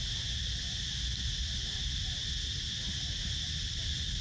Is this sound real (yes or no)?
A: yes